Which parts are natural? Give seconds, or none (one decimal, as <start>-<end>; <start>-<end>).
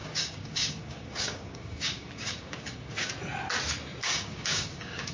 3.1-4.0